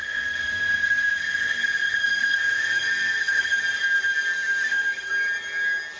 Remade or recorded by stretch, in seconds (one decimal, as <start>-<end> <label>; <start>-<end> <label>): 0.0-3.6 remade; 3.6-4.3 recorded; 4.3-5.1 remade; 5.1-6.0 recorded